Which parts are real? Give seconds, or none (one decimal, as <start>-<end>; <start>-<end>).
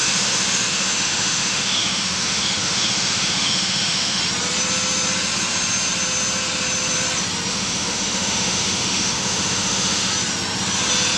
4.2-7.5; 10.1-11.2